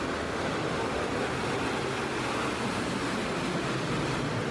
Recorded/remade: recorded